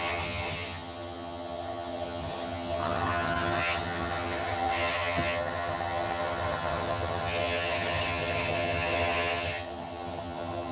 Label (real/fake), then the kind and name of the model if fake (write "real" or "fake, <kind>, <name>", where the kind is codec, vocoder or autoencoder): fake, vocoder, HiFi-GAN